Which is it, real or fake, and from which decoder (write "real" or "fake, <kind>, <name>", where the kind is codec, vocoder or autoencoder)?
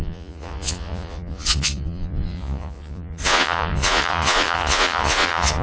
fake, vocoder, Vocos